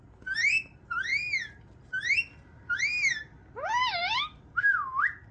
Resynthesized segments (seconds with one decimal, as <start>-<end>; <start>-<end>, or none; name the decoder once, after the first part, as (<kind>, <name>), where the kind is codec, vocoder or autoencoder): none